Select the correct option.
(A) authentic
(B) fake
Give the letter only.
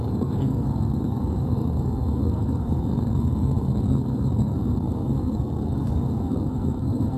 B